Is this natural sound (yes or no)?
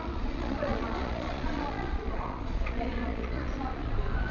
no